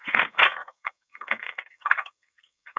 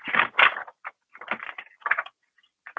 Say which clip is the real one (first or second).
second